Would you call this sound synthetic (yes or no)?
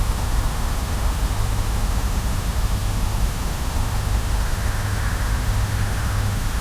yes